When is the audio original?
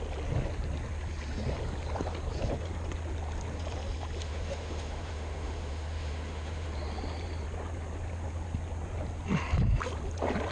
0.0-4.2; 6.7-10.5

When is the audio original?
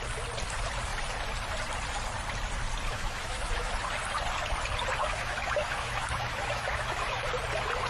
0.0-2.9; 3.7-5.0; 7.3-7.9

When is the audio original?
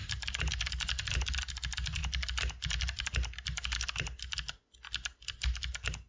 0.0-6.1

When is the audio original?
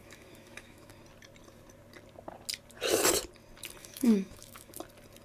0.9-3.8; 4.7-5.2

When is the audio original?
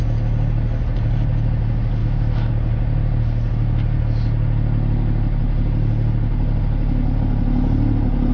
0.0-2.0; 2.5-8.3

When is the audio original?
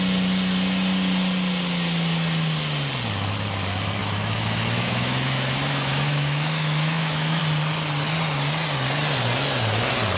0.0-4.0; 7.4-10.2